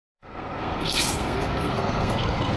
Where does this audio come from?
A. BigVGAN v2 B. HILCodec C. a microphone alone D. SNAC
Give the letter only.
D